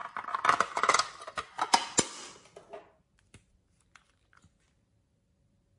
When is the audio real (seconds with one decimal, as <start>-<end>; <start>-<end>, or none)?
0.0-3.5